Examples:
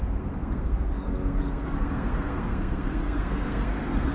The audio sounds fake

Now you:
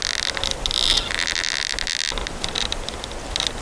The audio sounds real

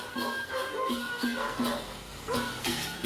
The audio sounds fake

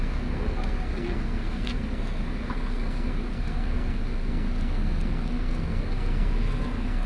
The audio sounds fake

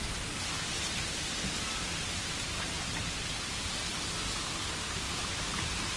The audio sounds real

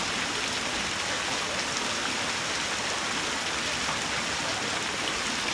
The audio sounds real